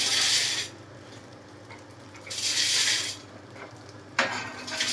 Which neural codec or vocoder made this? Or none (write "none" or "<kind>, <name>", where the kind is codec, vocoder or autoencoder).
none